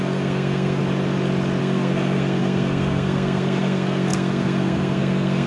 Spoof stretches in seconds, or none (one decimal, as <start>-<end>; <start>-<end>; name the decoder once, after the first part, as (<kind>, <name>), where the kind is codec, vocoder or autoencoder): 0.0-0.8 (codec, SNAC); 1.6-5.5